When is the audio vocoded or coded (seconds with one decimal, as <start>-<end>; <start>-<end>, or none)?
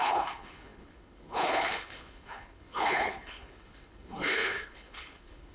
0.0-5.5